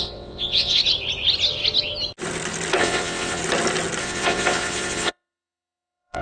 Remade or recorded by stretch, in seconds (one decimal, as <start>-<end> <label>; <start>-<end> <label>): 0.0-0.8 remade; 0.8-2.8 recorded; 2.8-3.4 remade; 3.4-4.0 recorded; 4.0-6.2 remade

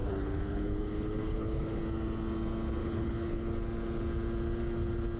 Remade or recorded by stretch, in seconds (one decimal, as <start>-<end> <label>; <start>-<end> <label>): 0.0-1.8 remade; 1.8-2.8 recorded; 2.8-3.5 remade; 3.5-5.2 recorded

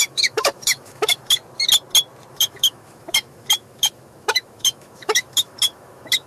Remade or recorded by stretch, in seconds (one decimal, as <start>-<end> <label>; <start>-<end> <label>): 0.0-1.4 remade; 1.4-2.3 recorded; 2.3-6.3 remade

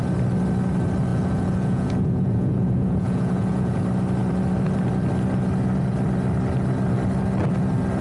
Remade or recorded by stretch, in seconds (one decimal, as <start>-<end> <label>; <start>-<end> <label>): 0.0-1.1 recorded; 1.1-3.8 remade; 3.8-8.0 recorded

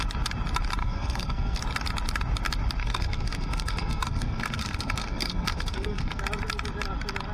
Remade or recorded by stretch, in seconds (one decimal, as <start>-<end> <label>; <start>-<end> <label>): 0.0-0.8 recorded; 0.8-1.6 remade; 1.6-2.8 recorded; 2.8-6.2 remade; 6.2-7.3 recorded